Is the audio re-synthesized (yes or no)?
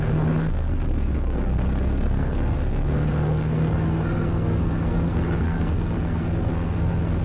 yes